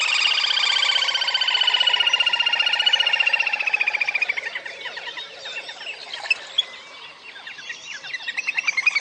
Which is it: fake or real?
real